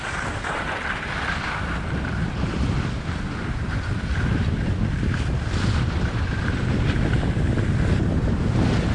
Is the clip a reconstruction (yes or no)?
no